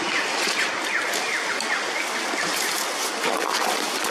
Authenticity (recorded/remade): recorded